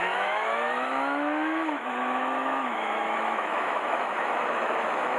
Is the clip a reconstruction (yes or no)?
yes